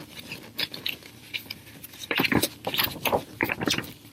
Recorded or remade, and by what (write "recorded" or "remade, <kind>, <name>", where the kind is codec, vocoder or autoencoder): remade, vocoder, BigVGAN v2